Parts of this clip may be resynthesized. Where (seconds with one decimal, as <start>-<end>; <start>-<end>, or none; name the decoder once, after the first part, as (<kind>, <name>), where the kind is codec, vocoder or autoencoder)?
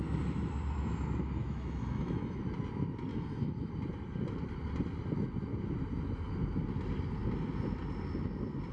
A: 1.4-2.4 (autoencoder, DAC-VAE); 3.1-3.7